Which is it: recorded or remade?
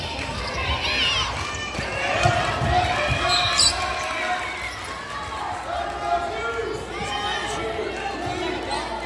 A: recorded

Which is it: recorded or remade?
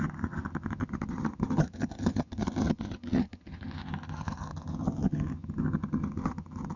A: remade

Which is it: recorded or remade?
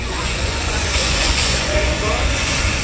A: remade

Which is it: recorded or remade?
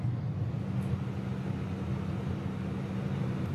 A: recorded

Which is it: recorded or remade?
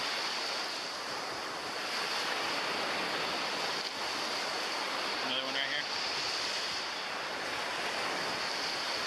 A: recorded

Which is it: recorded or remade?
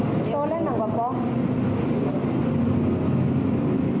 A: recorded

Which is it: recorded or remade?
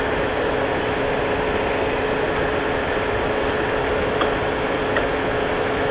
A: recorded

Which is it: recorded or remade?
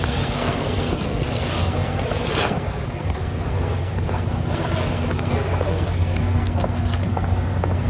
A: remade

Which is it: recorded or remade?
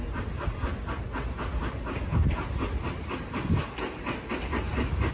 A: recorded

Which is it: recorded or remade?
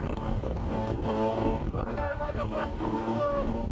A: remade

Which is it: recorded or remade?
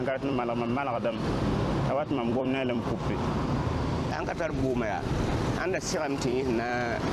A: remade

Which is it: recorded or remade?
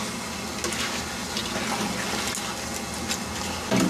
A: recorded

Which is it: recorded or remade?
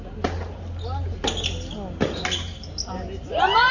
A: recorded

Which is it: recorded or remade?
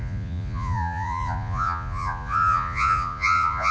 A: remade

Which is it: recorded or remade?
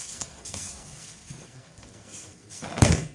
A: remade